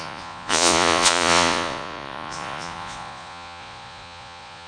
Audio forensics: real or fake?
fake